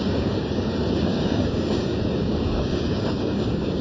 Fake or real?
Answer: fake